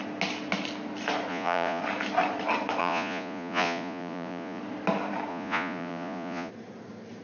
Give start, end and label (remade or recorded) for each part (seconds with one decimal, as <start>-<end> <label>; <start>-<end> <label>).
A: 0.0-1.3 recorded; 1.3-1.8 remade; 1.8-2.8 recorded; 2.8-4.6 remade; 4.6-5.3 recorded; 5.3-6.5 remade; 6.5-7.2 recorded